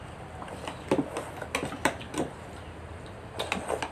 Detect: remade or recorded recorded